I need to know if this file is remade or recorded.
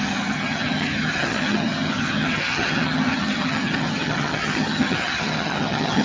remade